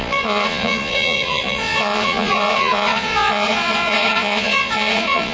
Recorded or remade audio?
remade